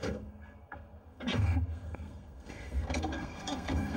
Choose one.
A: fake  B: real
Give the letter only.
A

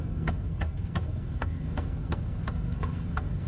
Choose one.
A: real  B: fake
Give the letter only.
B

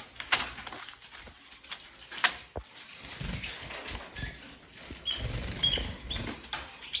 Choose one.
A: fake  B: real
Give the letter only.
B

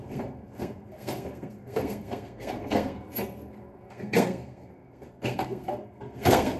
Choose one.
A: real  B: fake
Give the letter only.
B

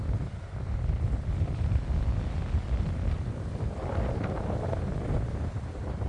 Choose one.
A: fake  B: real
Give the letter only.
B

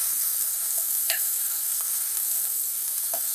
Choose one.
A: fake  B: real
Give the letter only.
A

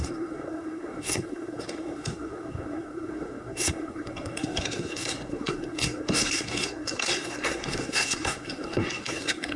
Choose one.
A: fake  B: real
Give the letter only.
A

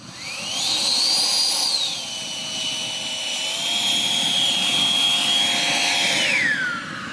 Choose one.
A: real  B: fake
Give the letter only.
A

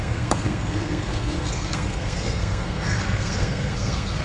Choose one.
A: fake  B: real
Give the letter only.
A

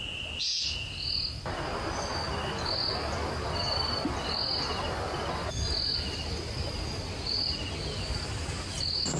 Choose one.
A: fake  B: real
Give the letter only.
B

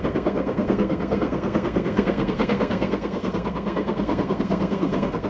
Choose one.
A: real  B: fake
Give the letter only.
B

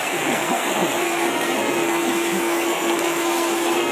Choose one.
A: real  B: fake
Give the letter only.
B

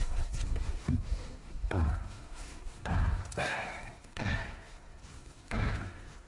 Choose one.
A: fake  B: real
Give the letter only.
A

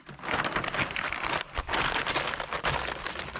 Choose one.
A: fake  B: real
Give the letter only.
B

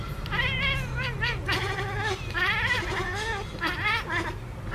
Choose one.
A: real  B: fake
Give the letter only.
A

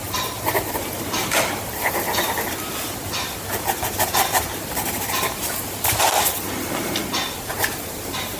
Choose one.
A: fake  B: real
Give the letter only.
B